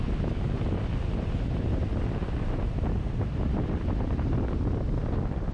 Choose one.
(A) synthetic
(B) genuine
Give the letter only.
B